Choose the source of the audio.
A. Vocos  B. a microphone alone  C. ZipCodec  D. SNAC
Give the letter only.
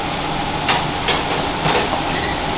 B